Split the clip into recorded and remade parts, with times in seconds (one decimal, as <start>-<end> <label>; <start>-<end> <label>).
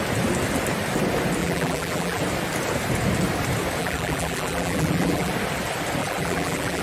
0.0-1.4 recorded; 1.4-2.2 remade; 2.2-3.8 recorded; 3.8-5.3 remade; 5.3-6.0 recorded; 6.0-6.8 remade